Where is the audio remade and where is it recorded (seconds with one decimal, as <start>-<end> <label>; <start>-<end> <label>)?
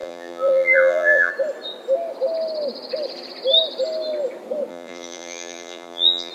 0.0-1.3 remade; 1.3-4.7 recorded; 4.7-6.3 remade